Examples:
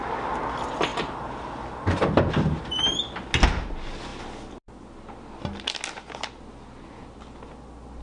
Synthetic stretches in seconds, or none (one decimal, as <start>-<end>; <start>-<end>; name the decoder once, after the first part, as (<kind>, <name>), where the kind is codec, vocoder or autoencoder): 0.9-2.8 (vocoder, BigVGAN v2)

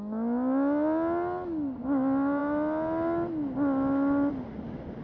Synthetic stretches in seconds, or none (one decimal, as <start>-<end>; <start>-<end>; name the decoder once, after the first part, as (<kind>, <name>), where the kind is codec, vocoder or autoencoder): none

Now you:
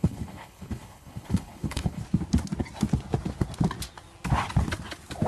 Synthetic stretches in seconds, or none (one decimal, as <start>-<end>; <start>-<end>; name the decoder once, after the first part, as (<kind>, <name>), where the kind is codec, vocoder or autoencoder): 0.0-2.0 (codec, HILCodec)